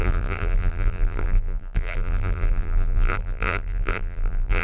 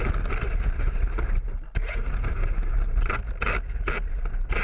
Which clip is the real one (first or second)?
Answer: second